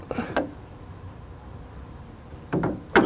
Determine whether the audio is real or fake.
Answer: fake